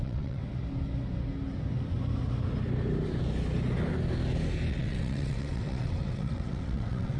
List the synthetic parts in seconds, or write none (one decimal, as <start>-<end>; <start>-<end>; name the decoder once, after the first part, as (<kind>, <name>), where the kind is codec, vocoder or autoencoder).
0.0-0.4 (vocoder, WaveNeXt); 4.7-7.2